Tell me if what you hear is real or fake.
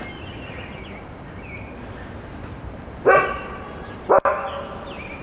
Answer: real